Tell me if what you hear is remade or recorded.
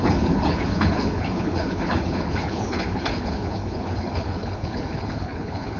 remade